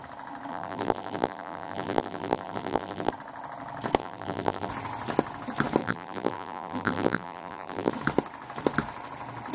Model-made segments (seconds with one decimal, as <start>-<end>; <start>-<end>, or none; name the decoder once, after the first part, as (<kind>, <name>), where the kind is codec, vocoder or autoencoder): 0.5-3.1 (vocoder, BigVGAN v2); 4.0-4.7; 5.8-7.9